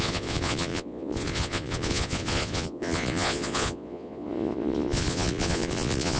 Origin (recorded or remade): remade